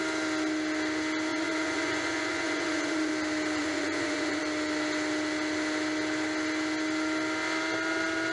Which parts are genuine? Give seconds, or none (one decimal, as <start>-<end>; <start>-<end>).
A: 0.0-1.3; 3.1-3.6; 4.4-8.3